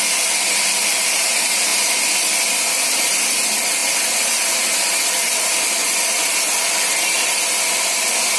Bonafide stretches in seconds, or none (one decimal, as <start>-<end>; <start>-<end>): 0.0-8.4